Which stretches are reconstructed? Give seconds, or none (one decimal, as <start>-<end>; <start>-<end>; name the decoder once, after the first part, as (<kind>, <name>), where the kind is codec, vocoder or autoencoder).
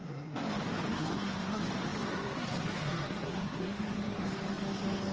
0.0-0.5 (codec, SNAC); 0.9-1.6; 2.0-4.3